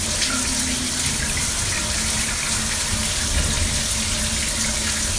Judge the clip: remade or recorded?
recorded